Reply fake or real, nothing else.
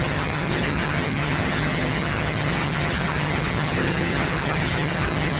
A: fake